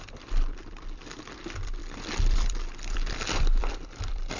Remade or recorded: remade